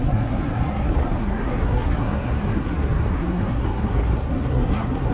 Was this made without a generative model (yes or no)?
no